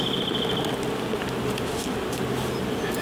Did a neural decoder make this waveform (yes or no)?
no